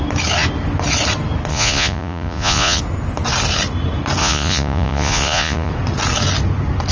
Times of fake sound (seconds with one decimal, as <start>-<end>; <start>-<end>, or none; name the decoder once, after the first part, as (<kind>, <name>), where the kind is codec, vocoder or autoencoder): 1.5-2.8 (vocoder, Vocos); 4.2-5.7